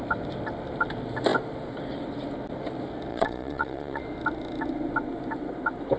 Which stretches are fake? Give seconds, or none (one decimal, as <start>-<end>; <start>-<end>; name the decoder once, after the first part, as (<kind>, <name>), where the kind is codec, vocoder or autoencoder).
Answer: 3.1-4.0 (vocoder, Vocos)